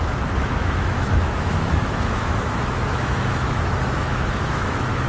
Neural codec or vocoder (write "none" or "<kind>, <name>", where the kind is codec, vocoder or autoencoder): autoencoder, DAC-VAE